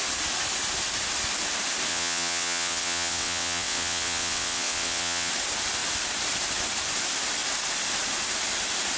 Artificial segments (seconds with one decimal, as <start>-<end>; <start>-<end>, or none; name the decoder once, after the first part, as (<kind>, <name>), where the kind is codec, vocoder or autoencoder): 1.9-5.3 (vocoder, WaveNeXt)